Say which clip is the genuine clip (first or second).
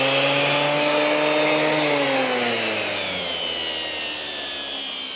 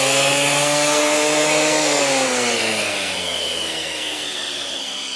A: first